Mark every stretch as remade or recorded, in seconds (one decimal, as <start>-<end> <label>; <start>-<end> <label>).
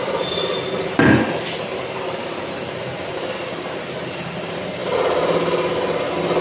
0.0-6.4 recorded